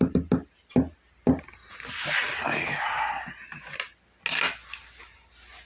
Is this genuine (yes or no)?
yes